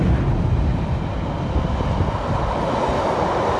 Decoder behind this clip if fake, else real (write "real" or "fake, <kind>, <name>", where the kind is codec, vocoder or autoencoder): real